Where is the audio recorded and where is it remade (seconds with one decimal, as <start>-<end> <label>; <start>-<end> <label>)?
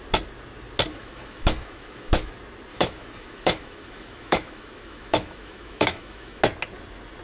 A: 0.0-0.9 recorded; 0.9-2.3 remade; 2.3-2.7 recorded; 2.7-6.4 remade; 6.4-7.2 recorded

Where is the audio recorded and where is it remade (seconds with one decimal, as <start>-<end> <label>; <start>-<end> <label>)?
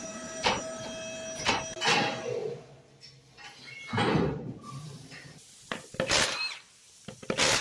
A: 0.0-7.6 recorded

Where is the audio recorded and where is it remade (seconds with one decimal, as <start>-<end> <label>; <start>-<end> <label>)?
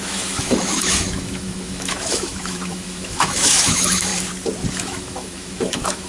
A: 0.0-4.1 remade; 4.1-4.7 recorded; 4.7-6.1 remade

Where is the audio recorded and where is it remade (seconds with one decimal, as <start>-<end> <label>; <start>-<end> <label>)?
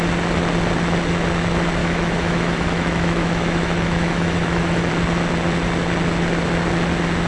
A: 0.0-1.8 recorded; 1.8-4.9 remade; 4.9-7.3 recorded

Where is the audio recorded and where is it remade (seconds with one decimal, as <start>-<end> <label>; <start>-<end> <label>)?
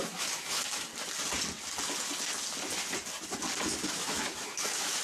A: 0.0-0.9 remade; 0.9-3.9 recorded; 3.9-5.0 remade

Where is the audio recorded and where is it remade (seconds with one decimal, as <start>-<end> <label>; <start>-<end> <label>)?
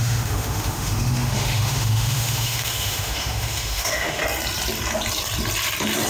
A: 0.0-4.2 remade; 4.2-6.1 recorded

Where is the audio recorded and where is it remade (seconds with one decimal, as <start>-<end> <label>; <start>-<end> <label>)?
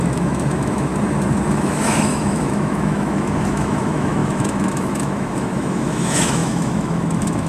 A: 0.0-0.9 remade; 0.9-1.5 recorded; 1.5-7.5 remade